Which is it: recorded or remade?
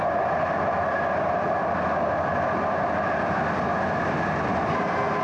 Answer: recorded